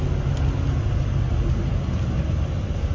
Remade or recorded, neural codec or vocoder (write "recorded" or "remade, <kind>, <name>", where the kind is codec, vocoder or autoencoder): recorded